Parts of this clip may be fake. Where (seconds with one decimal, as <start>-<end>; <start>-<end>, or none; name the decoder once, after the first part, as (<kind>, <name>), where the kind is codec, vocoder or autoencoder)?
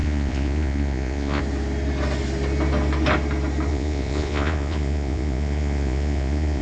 0.0-1.4 (vocoder, Vocos); 3.7-6.6